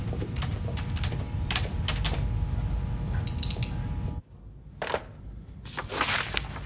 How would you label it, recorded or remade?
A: recorded